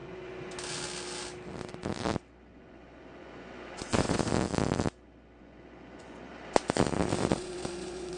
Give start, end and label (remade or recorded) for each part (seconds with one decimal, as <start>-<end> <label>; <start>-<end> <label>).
0.0-0.5 remade; 0.5-2.5 recorded; 2.5-4.3 remade; 4.3-5.4 recorded; 5.4-6.3 remade; 6.3-7.3 recorded; 7.3-8.2 remade